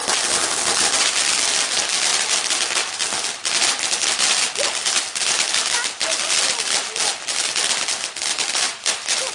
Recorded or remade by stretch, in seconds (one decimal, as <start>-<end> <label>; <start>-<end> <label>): 0.0-9.3 recorded